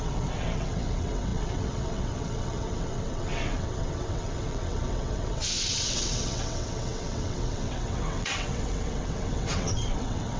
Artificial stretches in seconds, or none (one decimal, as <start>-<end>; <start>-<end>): 0.0-10.4